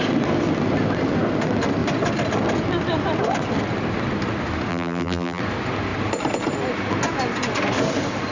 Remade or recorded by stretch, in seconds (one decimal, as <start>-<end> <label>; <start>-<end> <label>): 0.0-4.7 recorded; 4.7-5.4 remade; 5.4-8.3 recorded